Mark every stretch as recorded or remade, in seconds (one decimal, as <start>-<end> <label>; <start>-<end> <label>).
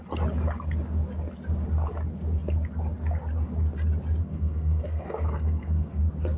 0.0-4.2 recorded; 4.2-6.0 remade; 6.0-6.4 recorded